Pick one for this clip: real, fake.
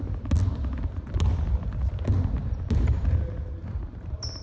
real